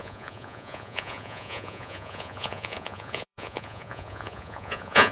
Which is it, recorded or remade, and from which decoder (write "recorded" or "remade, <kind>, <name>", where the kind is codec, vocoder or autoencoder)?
remade, vocoder, Vocos